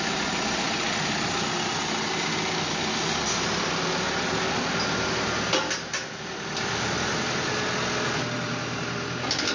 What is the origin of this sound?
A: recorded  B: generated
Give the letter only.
A